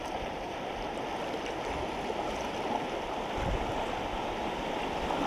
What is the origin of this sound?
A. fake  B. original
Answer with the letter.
B